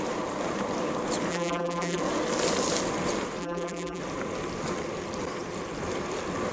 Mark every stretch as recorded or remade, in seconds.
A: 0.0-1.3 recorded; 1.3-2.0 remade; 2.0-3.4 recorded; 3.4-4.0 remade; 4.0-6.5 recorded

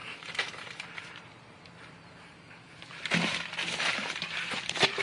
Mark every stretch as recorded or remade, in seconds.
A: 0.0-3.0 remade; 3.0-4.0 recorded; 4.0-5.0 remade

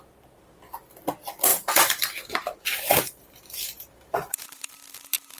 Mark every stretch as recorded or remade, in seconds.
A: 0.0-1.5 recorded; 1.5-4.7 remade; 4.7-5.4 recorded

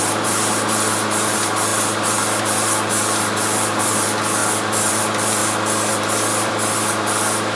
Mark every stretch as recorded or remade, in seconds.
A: 0.0-4.4 remade; 4.4-4.9 recorded; 4.9-5.4 remade; 5.4-5.9 recorded; 5.9-7.6 remade

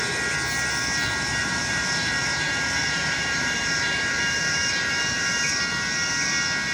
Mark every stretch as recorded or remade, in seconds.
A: 0.0-1.4 recorded; 1.4-5.4 remade; 5.4-6.7 recorded